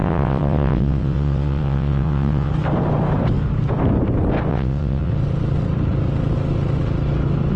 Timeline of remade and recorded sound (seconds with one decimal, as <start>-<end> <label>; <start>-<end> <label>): 0.0-2.5 remade; 2.5-4.5 recorded; 4.5-5.1 remade; 5.1-7.6 recorded